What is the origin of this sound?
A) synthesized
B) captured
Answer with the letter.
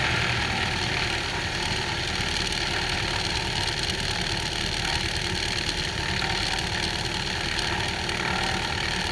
B